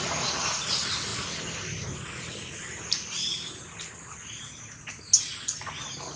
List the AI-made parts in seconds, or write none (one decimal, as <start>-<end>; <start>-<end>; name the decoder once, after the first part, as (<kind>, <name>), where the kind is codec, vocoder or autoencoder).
none